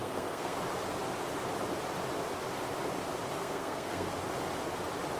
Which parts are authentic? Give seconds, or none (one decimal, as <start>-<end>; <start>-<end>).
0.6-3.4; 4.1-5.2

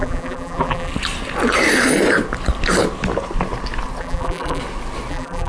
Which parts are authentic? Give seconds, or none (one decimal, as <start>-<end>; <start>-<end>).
0.9-4.0; 4.6-5.1

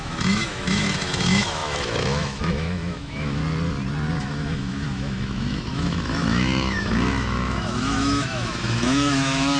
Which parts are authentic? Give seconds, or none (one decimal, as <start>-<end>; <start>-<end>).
3.4-4.2

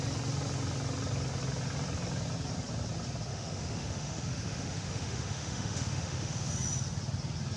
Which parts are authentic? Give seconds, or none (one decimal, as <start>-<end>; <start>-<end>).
0.0-3.3; 6.5-7.6